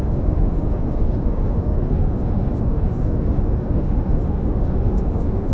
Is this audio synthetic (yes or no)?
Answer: yes